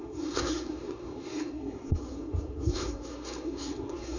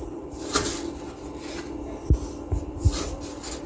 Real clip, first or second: second